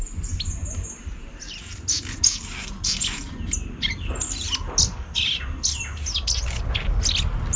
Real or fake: real